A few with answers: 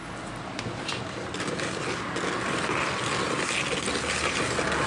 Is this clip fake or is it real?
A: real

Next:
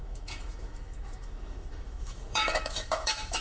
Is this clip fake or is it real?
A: fake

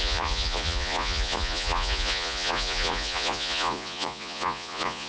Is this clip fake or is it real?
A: fake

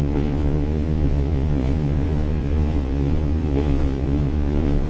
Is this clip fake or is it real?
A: fake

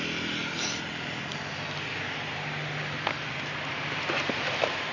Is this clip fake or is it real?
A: real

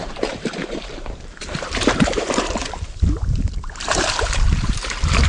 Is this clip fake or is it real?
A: fake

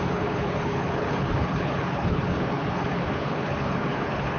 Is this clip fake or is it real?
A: fake